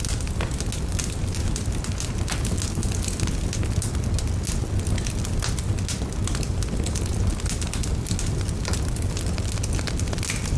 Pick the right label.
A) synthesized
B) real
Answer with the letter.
B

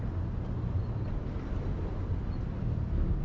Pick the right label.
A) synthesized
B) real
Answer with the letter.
B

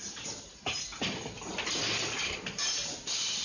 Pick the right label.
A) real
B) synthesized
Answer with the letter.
A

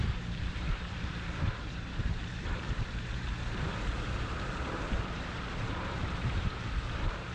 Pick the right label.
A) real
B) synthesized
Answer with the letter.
B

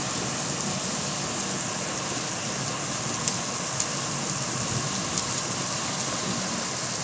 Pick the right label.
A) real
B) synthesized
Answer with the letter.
A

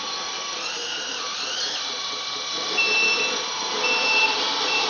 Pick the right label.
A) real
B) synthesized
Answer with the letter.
B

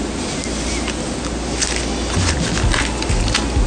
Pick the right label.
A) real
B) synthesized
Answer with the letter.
A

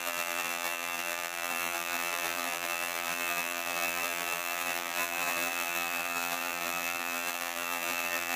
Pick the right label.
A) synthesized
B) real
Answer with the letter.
A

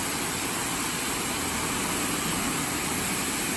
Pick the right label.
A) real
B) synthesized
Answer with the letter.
A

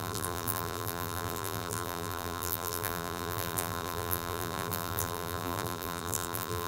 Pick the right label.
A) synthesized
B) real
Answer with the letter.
A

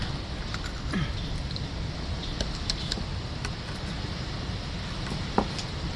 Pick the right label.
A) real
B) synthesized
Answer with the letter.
B